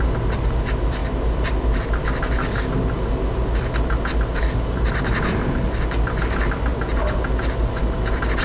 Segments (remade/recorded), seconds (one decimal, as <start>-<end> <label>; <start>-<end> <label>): 0.0-8.4 recorded